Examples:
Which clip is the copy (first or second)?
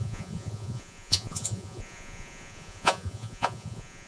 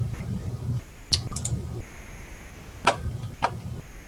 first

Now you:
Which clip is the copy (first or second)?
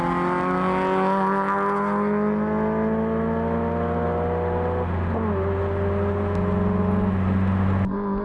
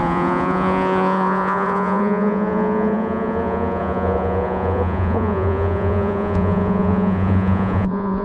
second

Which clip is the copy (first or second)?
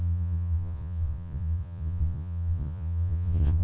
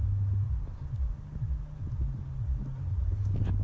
first